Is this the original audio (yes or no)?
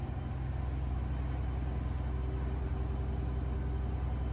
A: yes